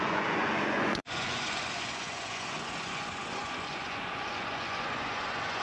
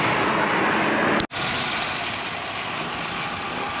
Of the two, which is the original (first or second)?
second